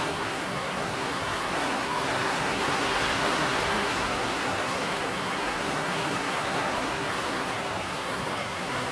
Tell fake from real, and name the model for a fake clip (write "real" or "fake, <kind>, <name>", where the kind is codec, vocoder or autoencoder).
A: fake, codec, SNAC